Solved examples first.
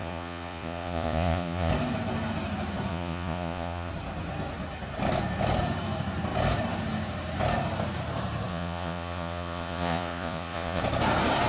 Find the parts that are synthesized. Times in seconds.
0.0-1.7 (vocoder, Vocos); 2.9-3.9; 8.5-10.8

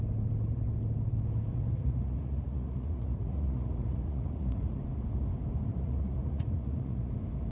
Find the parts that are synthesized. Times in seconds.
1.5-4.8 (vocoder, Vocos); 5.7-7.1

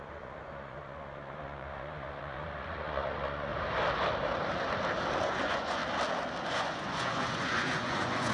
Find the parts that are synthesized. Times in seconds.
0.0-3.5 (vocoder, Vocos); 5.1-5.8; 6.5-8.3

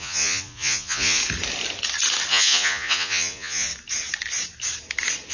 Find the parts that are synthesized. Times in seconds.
0.0-1.2 (vocoder, Vocos); 2.3-3.7